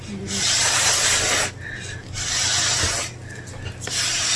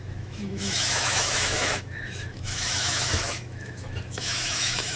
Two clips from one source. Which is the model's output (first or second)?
second